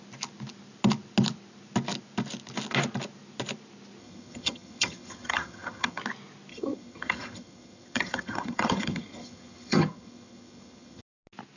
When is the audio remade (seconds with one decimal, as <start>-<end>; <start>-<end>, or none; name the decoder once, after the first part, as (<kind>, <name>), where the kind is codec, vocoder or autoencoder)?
4.0-6.0 (vocoder, HiFi-GAN); 6.5-11.0